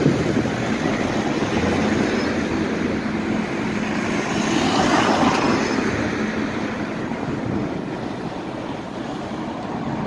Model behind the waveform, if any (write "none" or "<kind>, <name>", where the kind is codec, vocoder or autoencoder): none